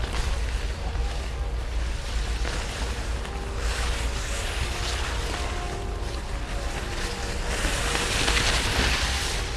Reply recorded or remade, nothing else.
recorded